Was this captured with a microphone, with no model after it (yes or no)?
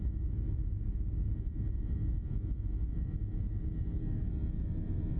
yes